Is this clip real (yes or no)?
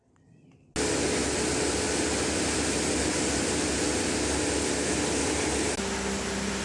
yes